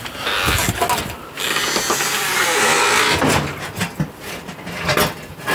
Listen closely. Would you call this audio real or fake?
real